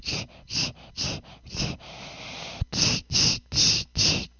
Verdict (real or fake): real